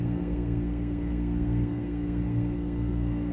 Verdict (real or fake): fake